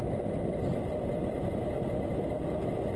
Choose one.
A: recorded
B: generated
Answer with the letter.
A